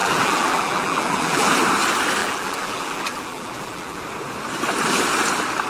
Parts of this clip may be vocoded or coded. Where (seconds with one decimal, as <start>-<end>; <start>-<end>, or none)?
0.0-1.5; 2.2-4.0